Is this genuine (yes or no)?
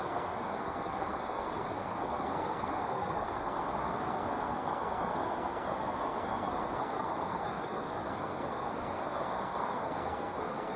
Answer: no